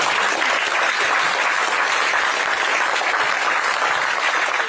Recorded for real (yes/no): yes